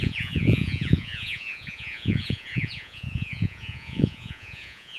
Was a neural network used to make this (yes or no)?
yes